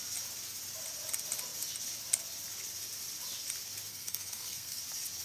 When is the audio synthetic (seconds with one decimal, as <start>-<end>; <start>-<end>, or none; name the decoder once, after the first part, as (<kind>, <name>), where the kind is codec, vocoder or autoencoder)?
3.9-4.8 (codec, SNAC)